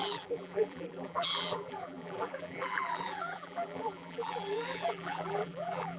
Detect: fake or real fake